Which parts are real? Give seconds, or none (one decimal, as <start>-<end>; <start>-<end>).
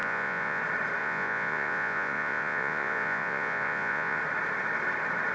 0.6-1.0; 4.2-5.3